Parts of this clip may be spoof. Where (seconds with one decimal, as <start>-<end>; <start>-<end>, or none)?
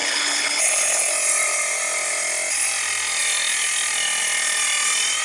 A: 0.0-1.1